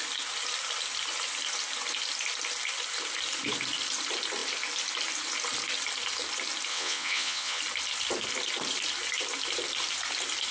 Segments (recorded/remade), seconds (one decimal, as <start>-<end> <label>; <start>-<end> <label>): 0.0-6.7 recorded; 6.7-7.6 remade; 7.6-10.5 recorded